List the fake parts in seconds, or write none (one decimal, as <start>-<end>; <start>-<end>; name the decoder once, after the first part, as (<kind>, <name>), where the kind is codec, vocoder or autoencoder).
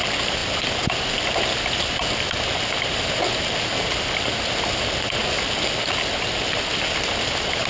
none